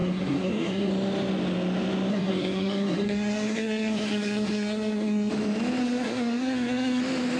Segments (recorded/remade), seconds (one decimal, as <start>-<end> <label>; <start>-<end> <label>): 0.0-0.9 remade; 0.9-2.1 recorded; 2.1-5.3 remade; 5.3-5.8 recorded; 5.8-7.0 remade; 7.0-7.4 recorded